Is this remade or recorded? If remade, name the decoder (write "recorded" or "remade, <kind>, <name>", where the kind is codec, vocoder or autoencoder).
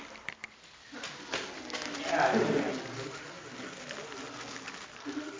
recorded